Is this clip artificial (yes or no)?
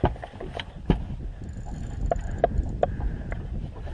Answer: no